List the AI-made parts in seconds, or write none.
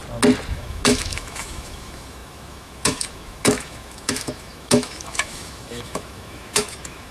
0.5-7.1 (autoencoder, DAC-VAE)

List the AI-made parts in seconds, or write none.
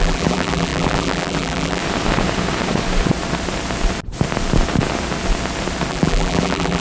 0.0-1.8 (vocoder, BigVGAN v2); 5.9-6.8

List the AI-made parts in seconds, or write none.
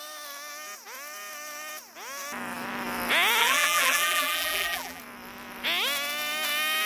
3.4-5.0 (vocoder, BigVGAN v2)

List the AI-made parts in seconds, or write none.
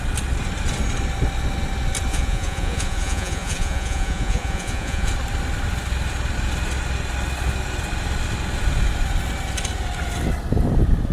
2.1-5.1 (vocoder, Vocos)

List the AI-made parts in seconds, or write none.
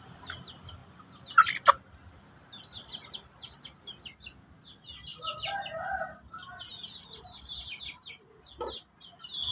none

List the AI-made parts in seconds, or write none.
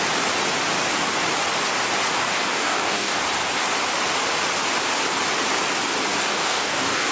2.5-3.2 (codec, DAC); 6.3-7.1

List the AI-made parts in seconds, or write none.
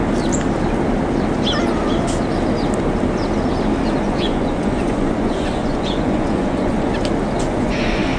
4.0-6.9 (vocoder, Vocos); 7.4-8.2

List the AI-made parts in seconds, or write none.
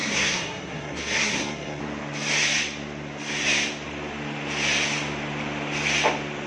0.0-1.8 (codec, SNAC)